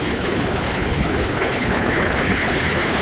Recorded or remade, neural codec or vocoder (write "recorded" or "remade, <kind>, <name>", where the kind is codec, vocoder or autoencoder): remade, codec, HILCodec